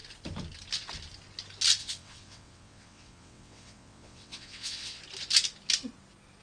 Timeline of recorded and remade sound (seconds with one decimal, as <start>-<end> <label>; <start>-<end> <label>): 0.0-1.8 recorded; 1.8-5.0 remade; 5.0-6.4 recorded